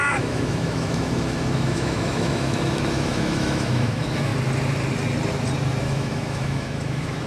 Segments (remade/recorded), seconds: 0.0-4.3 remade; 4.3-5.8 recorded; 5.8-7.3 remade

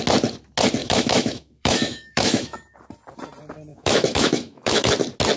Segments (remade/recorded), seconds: 0.0-0.8 recorded; 0.8-2.6 remade; 2.6-3.7 recorded; 3.7-4.9 remade; 4.9-5.4 recorded